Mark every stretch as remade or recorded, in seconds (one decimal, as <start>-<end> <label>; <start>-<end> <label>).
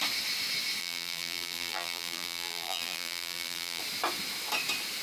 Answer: 0.0-0.8 recorded; 0.8-3.8 remade; 3.8-5.0 recorded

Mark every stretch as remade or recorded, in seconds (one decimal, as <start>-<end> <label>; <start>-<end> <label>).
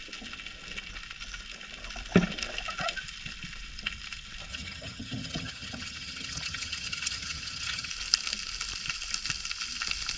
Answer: 0.0-4.5 recorded; 4.5-7.9 remade; 7.9-10.2 recorded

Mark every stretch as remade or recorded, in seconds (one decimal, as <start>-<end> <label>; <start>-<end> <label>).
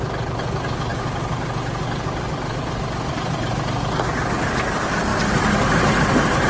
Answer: 0.0-6.5 recorded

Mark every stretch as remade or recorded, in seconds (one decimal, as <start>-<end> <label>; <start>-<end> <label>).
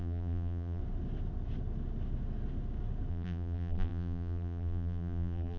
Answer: 0.0-0.8 remade; 0.8-3.1 recorded; 3.1-5.6 remade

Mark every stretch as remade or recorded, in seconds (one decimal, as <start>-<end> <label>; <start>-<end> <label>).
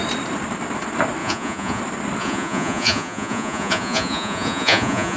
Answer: 0.0-1.2 recorded; 1.2-1.8 remade; 1.8-2.2 recorded; 2.2-5.2 remade